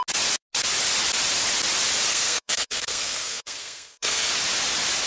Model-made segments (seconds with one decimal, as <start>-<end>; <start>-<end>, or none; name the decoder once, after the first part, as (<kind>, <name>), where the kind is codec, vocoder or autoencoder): 2.1-4.3 (codec, SNAC)